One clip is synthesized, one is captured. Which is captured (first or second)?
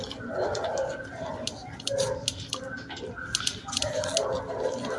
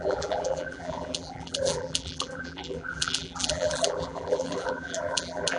first